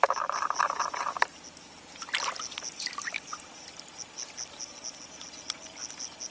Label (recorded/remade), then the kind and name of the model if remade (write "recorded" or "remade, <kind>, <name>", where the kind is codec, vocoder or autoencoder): recorded